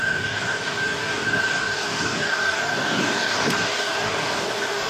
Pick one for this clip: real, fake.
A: fake